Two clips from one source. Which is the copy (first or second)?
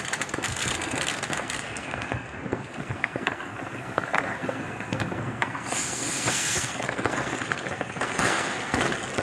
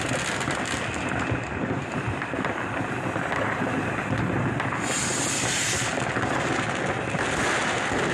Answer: first